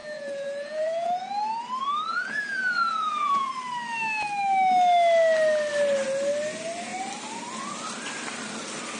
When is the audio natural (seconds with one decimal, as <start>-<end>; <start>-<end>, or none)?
1.3-2.1; 3.5-9.0